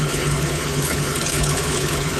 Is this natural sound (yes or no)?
no